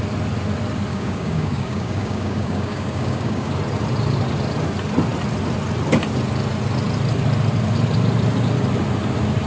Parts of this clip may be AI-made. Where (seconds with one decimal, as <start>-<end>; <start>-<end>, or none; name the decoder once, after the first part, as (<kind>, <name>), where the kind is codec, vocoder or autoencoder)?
0.9-3.5 (codec, DAC)